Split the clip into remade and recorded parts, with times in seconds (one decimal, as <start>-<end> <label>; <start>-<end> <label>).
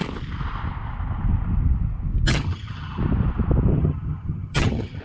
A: 0.0-2.3 recorded; 2.3-3.0 remade; 3.0-3.7 recorded; 3.7-5.0 remade